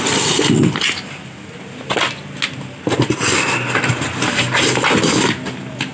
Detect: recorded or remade recorded